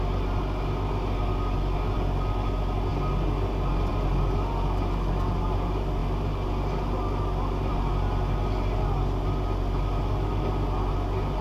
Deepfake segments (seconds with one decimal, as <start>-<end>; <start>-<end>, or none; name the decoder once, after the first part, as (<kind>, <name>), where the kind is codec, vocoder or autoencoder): none